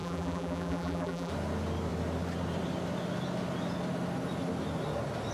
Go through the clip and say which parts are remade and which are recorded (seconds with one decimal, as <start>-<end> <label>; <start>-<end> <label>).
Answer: 0.0-1.3 remade; 1.3-5.3 recorded